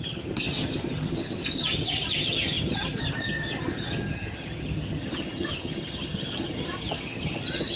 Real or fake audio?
fake